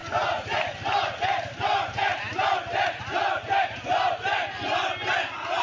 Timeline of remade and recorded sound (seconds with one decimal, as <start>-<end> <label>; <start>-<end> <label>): 0.0-5.6 recorded